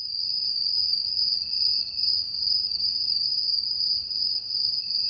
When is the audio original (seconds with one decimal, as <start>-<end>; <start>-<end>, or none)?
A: 0.0-0.5; 1.0-1.7